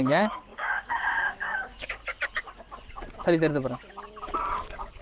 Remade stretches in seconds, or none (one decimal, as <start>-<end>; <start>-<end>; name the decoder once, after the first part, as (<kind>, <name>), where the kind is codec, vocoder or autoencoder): 0.0-2.0 (codec, DAC); 4.4-5.0